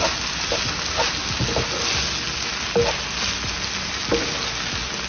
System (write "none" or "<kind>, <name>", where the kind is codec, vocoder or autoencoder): none